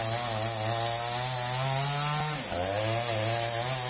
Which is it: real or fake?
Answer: real